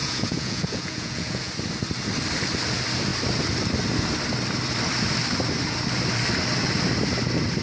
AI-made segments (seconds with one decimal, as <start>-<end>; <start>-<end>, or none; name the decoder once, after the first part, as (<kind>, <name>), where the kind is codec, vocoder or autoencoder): 0.0-1.5 (vocoder, Vocos)